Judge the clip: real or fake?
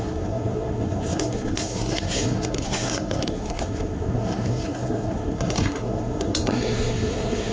fake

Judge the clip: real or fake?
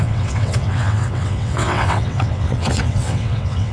fake